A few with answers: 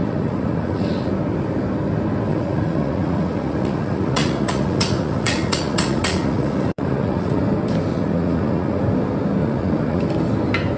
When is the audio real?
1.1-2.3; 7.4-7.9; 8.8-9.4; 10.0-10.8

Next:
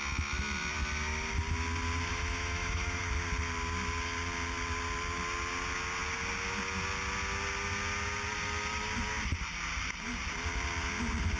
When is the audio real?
0.0-2.1; 3.0-11.4

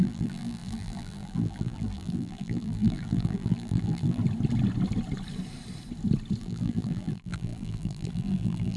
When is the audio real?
4.2-6.4

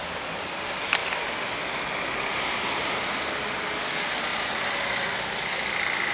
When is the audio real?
0.0-6.1

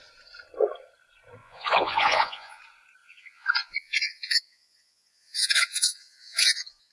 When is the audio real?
0.0-1.4; 2.6-3.0

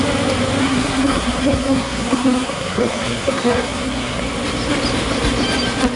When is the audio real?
0.0-0.6; 4.2-6.0

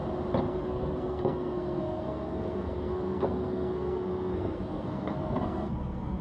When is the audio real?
0.0-0.5